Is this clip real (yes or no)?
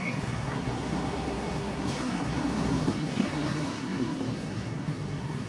no